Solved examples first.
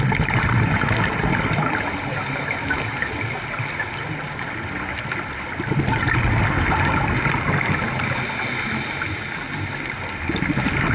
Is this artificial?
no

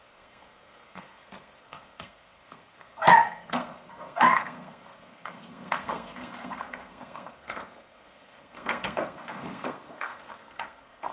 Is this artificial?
yes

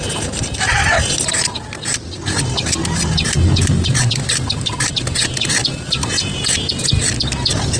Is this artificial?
no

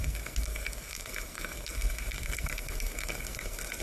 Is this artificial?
yes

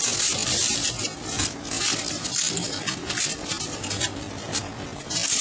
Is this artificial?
no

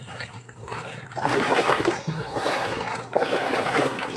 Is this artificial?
yes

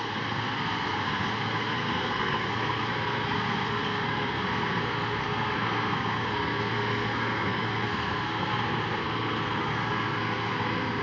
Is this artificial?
yes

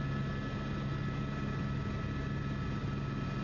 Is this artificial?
no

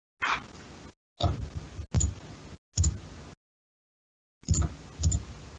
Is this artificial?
no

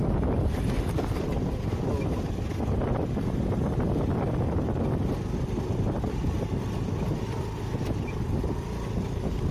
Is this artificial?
no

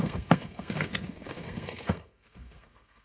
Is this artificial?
yes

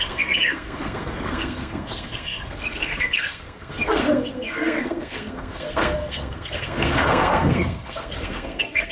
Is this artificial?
yes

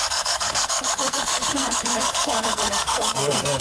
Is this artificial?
yes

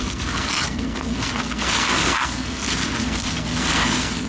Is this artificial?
yes